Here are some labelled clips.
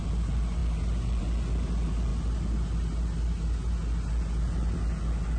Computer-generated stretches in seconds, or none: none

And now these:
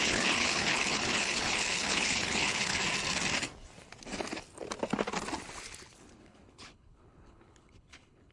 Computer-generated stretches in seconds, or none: 0.0-2.8 (codec, HILCodec); 5.9-8.3

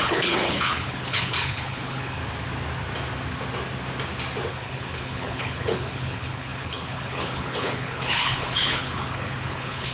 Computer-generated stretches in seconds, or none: 0.0-2.2 (codec, HILCodec); 4.5-9.9

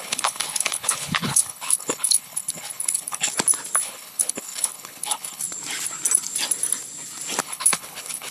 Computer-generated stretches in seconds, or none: 0.0-3.3 (codec, HILCodec); 3.8-5.4; 7.4-8.3

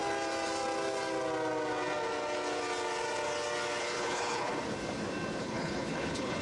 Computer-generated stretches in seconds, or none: 3.8-4.5 (codec, HILCodec); 5.4-6.4

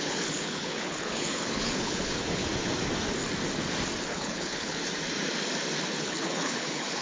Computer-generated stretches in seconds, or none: 0.0-2.5 (codec, HILCodec); 4.0-4.8; 6.0-7.0